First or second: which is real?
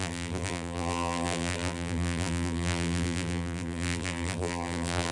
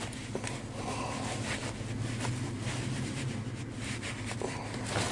second